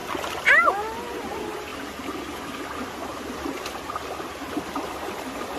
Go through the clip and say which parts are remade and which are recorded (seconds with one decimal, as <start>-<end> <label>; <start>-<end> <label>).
0.0-5.6 recorded